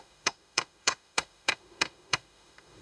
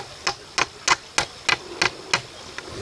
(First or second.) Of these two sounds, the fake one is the first